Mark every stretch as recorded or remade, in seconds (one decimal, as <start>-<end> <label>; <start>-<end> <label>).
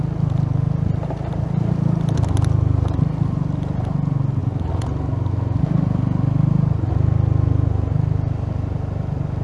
0.0-9.4 recorded